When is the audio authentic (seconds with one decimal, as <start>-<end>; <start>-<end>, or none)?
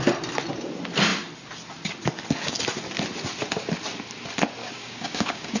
0.0-4.6